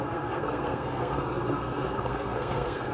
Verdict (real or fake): fake